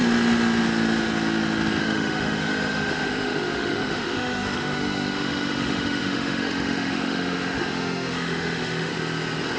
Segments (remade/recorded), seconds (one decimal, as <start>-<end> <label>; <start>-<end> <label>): 0.0-1.8 recorded; 1.8-8.9 remade; 8.9-9.6 recorded